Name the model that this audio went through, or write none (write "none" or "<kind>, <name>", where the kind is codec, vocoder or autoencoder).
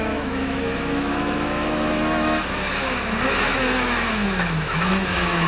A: autoencoder, DAC-VAE